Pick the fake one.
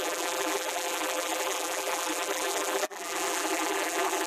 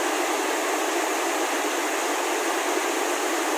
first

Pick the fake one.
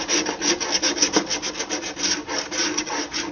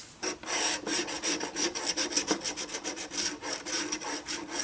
second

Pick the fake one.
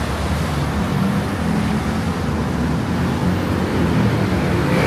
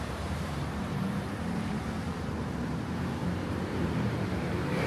second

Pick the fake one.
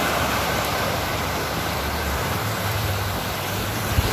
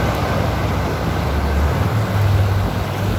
first